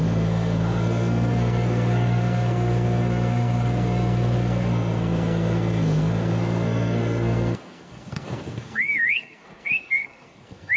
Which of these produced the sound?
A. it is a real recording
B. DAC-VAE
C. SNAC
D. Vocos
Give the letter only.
C